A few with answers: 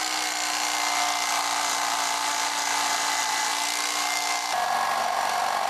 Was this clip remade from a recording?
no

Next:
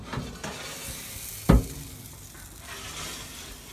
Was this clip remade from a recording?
no